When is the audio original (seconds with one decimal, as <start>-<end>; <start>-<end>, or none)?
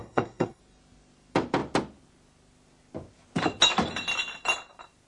0.6-5.1